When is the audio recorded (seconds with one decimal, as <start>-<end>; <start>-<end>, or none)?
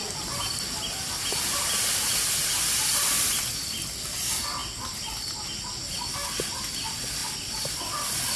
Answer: 3.3-4.6; 5.7-8.4